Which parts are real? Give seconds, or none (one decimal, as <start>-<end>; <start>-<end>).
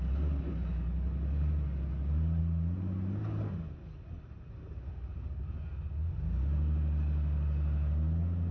0.0-8.5